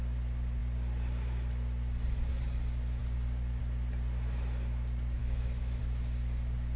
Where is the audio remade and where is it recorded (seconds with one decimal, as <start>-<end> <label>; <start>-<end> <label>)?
0.0-5.2 recorded; 5.2-5.8 remade; 5.8-6.8 recorded